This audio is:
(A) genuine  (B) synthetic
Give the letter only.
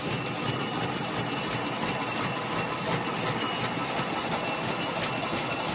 A